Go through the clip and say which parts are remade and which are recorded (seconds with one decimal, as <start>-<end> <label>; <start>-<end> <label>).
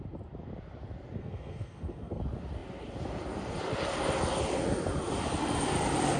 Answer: 0.0-1.2 recorded; 1.2-2.2 remade; 2.2-6.2 recorded